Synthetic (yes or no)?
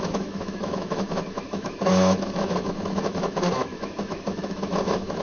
yes